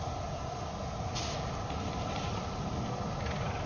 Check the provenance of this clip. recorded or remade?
recorded